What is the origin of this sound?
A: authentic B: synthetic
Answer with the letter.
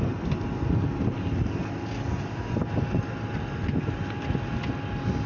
A